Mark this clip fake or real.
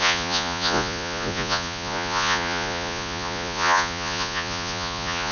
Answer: fake